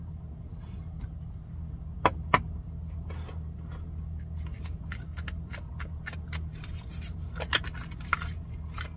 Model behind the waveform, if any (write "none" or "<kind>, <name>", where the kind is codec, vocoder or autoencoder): none